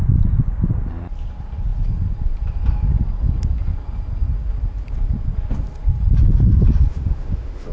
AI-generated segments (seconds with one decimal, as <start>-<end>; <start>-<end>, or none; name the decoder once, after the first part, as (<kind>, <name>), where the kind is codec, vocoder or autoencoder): 6.9-7.7 (autoencoder, DAC-VAE)